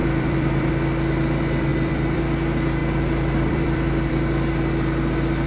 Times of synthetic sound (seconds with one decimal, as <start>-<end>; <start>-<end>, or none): 0.0-0.7; 1.7-2.2; 2.8-4.1